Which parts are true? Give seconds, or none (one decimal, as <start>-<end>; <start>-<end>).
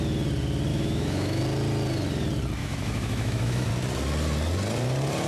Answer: 0.0-0.7; 1.4-2.6; 3.7-5.3